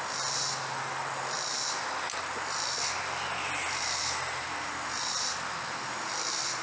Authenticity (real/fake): real